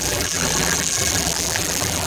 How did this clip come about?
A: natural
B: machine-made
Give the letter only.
B